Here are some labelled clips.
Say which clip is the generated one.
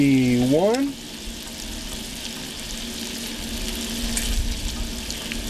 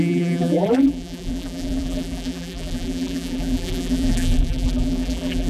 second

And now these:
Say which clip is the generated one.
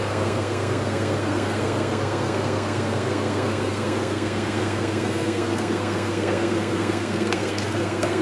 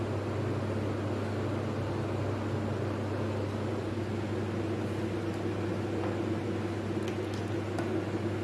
first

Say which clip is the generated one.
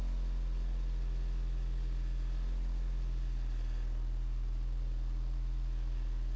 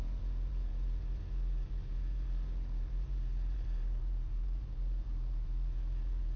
second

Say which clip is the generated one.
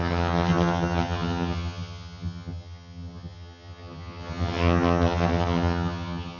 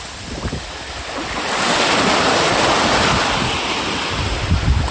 first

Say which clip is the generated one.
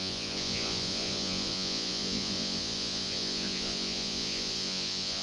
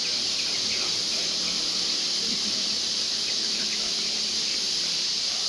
first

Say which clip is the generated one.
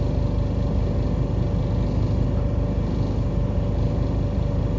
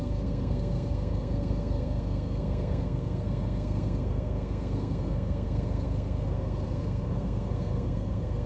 second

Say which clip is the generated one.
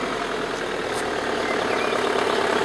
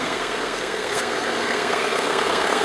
second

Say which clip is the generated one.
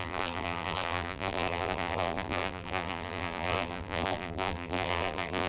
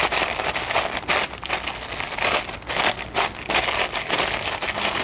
first